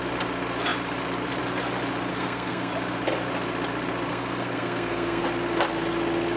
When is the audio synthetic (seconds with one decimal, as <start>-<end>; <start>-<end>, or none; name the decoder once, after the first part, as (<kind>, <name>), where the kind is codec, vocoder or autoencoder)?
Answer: 2.1-2.7 (codec, SNAC); 4.1-5.2